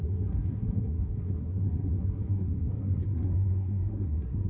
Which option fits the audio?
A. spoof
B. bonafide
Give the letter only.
A